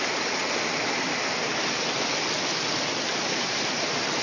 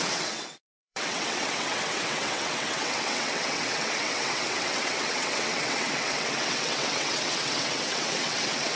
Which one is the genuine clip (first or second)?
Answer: first